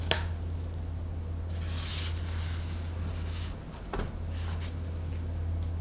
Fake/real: real